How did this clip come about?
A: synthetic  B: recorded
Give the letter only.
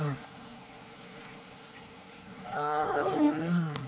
A